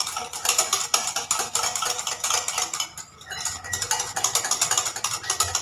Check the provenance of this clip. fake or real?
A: real